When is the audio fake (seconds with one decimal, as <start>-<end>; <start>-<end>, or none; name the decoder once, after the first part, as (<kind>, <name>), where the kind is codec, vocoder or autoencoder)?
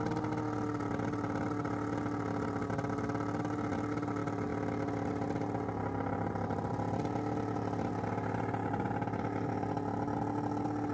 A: none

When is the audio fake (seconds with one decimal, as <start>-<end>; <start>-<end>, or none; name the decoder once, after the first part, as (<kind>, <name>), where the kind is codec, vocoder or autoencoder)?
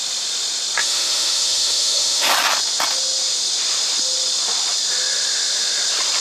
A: 0.8-2.3 (autoencoder, DAC-VAE)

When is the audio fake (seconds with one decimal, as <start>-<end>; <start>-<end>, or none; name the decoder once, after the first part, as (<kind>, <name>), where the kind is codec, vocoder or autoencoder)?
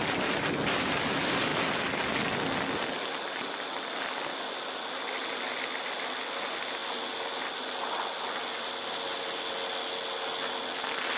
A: none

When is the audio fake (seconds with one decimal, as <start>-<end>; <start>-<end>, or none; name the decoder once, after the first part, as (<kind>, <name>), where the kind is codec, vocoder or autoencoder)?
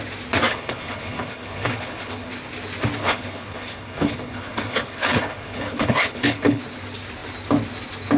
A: 0.5-2.3 (codec, HILCodec); 3.0-6.6